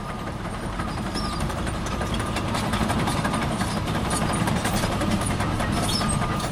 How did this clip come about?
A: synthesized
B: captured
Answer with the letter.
A